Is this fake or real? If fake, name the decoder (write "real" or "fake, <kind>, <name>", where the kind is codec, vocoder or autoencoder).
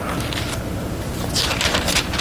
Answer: real